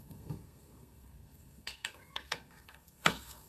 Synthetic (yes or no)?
yes